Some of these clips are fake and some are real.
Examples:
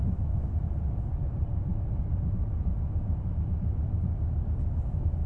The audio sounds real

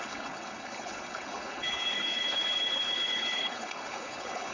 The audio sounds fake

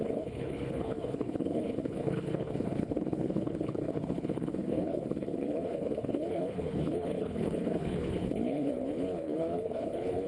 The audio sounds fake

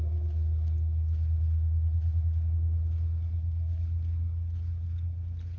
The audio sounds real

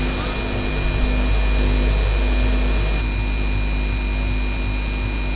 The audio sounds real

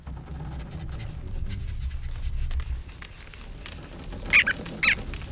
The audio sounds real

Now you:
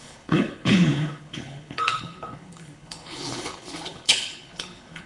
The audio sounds fake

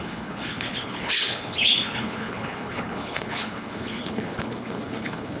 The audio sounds fake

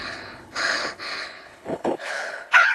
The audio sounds fake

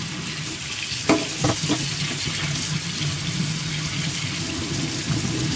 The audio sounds real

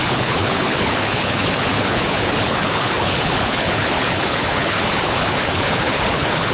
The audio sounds fake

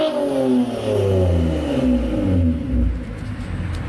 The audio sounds real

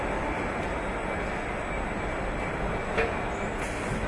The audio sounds real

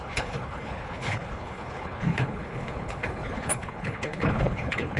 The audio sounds fake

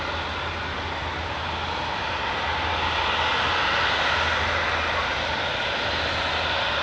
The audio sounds real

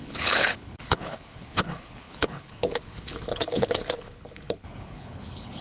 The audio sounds fake